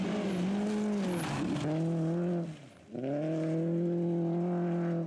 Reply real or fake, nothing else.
real